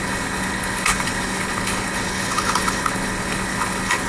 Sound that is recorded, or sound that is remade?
remade